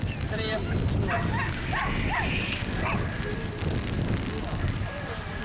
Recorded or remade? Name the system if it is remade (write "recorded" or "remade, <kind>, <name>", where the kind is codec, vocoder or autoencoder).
recorded